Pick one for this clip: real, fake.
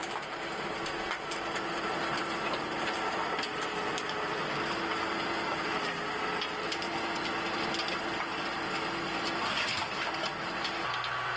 real